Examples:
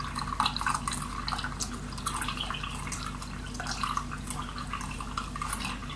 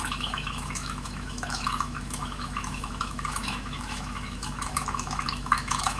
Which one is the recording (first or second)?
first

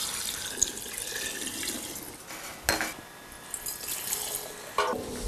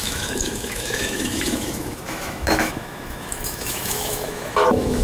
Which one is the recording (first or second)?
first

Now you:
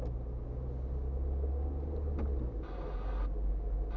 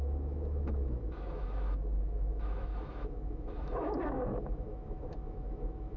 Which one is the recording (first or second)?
first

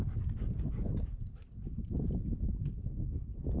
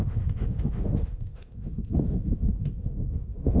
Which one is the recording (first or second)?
first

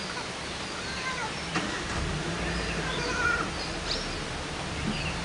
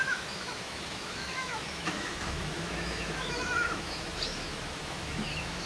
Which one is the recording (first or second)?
first